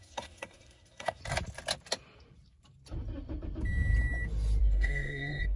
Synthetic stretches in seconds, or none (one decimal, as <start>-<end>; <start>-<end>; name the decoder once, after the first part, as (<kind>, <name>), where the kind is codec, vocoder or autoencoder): 0.0-1.2 (codec, SNAC); 4.6-5.6